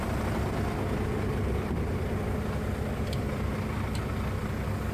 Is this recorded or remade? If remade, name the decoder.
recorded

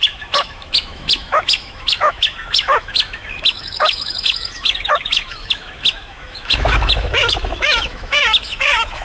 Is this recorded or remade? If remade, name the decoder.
remade, autoencoder, DAC-VAE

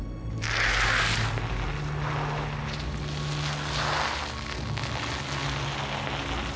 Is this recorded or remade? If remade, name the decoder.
recorded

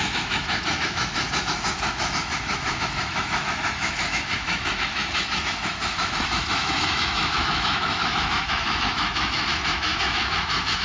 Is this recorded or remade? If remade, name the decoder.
remade, autoencoder, DAC-VAE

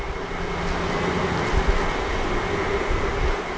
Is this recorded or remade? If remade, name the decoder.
recorded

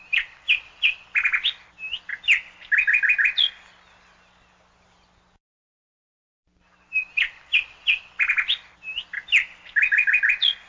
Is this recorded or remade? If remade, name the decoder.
recorded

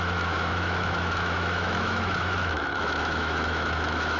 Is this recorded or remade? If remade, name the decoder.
remade, autoencoder, DAC-VAE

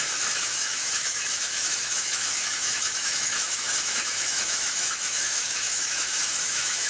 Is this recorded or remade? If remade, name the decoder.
remade, autoencoder, DAC-VAE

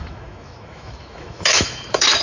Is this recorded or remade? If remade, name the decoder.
remade, autoencoder, DAC-VAE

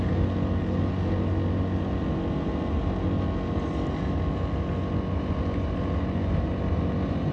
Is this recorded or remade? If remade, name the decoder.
recorded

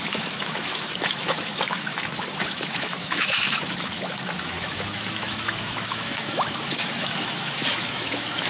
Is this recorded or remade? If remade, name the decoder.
remade, autoencoder, DAC-VAE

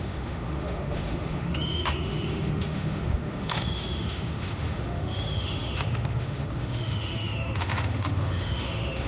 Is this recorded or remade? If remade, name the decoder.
remade, autoencoder, DAC-VAE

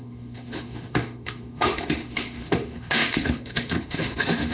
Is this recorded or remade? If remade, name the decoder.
remade, autoencoder, DAC-VAE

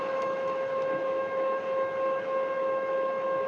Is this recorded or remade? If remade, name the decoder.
remade, autoencoder, DAC-VAE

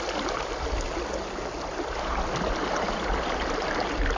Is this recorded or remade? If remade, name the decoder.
recorded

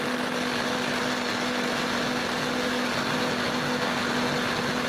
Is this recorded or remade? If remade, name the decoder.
recorded